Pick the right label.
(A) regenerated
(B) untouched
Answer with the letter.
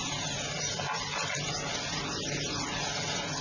B